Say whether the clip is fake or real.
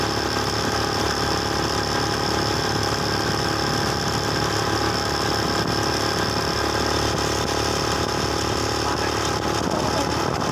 real